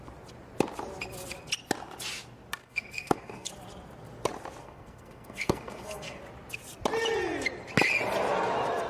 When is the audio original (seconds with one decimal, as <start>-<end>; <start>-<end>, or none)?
0.0-2.6; 3.5-4.6; 6.2-8.9